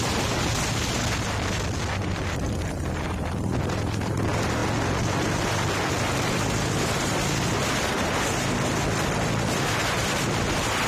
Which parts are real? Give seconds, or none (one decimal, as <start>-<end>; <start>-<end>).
0.0-10.9